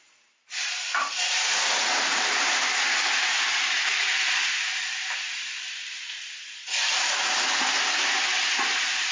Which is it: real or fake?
fake